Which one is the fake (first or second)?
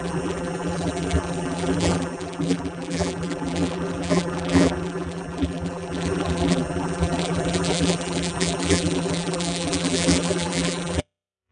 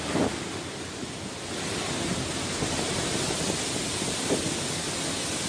first